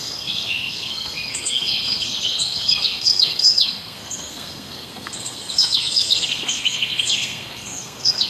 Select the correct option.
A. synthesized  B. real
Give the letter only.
A